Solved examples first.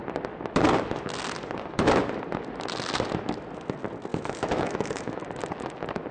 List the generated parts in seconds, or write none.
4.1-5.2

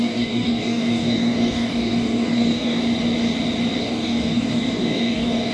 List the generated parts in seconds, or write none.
0.0-2.8; 3.8-5.5

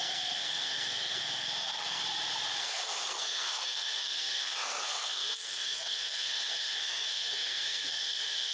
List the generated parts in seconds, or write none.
0.0-2.0; 2.6-8.5